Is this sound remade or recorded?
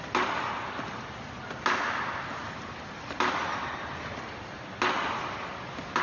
recorded